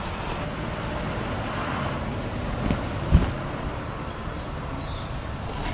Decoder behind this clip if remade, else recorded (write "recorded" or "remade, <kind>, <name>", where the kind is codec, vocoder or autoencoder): recorded